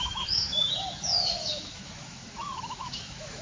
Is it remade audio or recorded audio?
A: remade